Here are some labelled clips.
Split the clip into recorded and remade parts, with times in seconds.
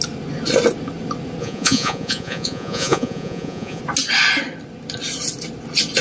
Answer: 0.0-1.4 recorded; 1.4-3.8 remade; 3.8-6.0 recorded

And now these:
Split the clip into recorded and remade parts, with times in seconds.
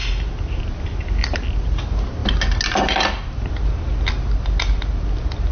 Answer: 0.0-5.5 recorded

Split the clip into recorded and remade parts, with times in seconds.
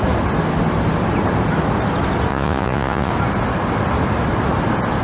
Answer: 0.0-2.3 recorded; 2.3-3.1 remade; 3.1-5.0 recorded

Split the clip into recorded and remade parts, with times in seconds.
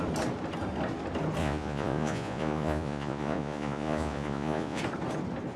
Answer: 0.0-1.4 recorded; 1.4-4.8 remade; 4.8-5.6 recorded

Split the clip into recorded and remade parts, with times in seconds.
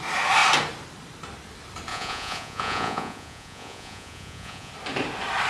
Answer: 0.0-1.9 recorded; 1.9-4.7 remade; 4.7-5.5 recorded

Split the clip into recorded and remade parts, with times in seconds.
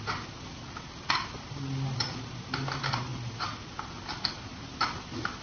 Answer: 0.0-5.4 recorded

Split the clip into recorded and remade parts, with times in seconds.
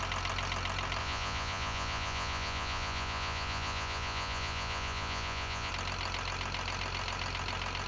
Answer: 0.0-1.0 recorded; 1.0-5.7 remade; 5.7-7.9 recorded